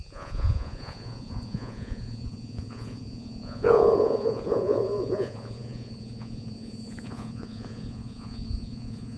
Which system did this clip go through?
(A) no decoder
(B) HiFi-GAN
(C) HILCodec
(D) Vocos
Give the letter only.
D